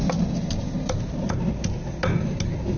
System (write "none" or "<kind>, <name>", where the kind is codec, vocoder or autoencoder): none